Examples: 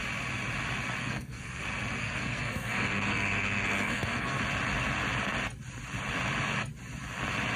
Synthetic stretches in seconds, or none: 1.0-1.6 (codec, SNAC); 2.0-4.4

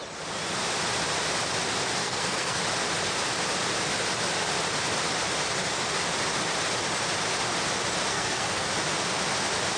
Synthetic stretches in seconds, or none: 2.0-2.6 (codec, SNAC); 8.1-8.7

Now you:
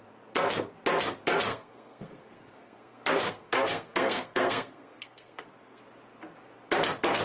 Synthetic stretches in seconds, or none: 1.5-5.8 (codec, SNAC)